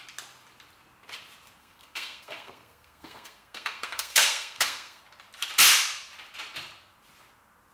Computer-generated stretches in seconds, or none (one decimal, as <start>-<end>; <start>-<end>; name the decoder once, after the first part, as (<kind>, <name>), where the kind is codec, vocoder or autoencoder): 1.6-5.0 (codec, SNAC)